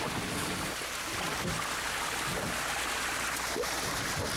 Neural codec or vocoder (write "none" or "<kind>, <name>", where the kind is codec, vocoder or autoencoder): none